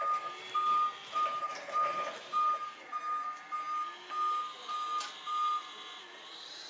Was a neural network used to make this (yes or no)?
no